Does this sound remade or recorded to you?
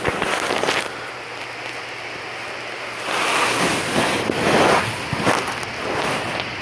recorded